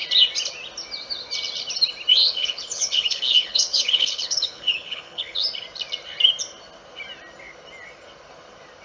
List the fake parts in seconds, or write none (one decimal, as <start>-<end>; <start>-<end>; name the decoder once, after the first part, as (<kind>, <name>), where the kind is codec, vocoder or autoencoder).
2.1-5.4 (codec, HILCodec)